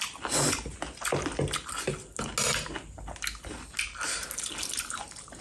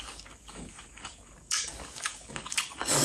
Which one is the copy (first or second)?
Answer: second